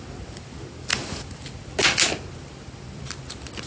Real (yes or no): yes